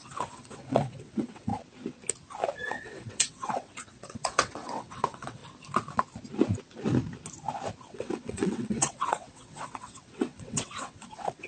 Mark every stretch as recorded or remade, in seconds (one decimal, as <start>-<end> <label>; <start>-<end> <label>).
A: 0.0-1.5 remade; 1.5-2.7 recorded; 2.7-5.4 remade; 5.4-7.9 recorded; 7.9-11.5 remade

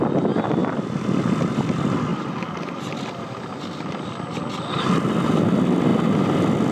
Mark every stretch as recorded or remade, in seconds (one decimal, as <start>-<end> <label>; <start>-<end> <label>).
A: 0.0-6.7 recorded

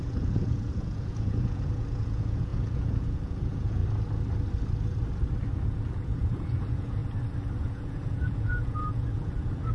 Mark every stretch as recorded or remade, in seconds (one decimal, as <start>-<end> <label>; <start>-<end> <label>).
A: 0.0-3.8 remade; 3.8-5.6 recorded; 5.6-7.0 remade; 7.0-7.6 recorded; 7.6-9.7 remade

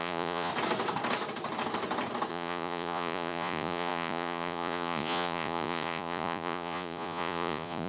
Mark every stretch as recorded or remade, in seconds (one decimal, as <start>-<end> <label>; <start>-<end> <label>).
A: 0.0-0.5 remade; 0.5-2.3 recorded; 2.3-7.9 remade

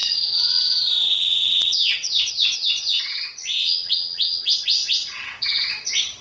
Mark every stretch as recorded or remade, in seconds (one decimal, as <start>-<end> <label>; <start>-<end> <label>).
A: 0.0-6.2 remade